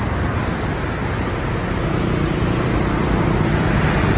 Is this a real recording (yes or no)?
yes